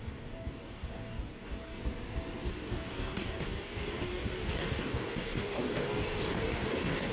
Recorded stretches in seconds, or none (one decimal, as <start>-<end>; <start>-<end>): 1.8-2.5